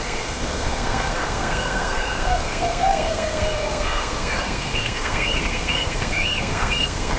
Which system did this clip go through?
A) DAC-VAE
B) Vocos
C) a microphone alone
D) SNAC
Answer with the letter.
D